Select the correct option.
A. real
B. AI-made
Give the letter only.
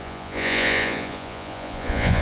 B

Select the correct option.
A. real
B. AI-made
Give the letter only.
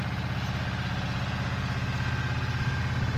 A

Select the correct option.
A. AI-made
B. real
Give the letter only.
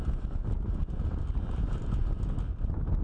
B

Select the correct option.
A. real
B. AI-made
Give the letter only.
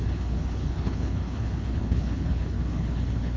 B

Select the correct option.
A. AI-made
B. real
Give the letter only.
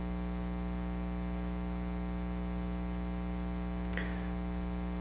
B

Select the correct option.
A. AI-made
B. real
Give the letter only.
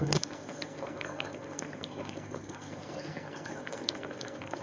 A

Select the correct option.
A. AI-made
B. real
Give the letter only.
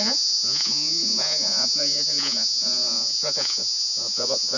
A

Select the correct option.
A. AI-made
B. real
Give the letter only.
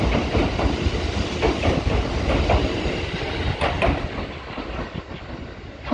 B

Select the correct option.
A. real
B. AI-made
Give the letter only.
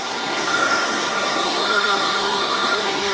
B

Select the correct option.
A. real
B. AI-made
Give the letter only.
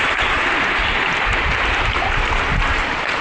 B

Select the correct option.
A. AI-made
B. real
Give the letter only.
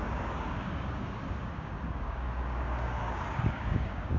A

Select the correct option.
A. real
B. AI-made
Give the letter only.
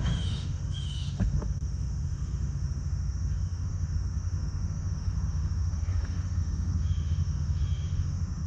B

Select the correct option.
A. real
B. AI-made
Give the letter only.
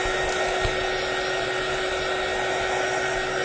A